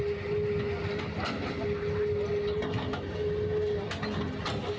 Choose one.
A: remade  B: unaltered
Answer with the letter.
B